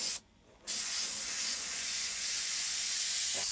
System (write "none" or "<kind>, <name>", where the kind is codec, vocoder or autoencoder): vocoder, Vocos